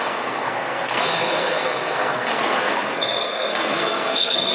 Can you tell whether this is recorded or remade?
remade